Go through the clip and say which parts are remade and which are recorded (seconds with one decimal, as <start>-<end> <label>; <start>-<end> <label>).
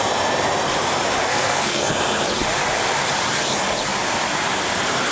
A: 0.0-1.3 recorded; 1.3-1.9 remade; 1.9-5.1 recorded